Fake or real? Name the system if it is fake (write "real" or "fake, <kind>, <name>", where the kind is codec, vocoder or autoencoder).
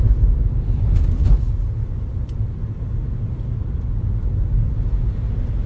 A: real